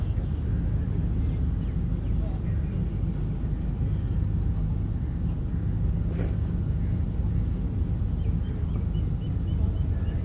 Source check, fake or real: real